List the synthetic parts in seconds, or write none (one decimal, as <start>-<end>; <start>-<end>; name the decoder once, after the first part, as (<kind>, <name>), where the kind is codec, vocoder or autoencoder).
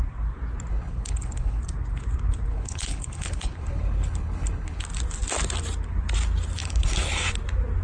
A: 0.7-1.6 (codec, HILCodec); 2.5-4.8; 6.6-7.3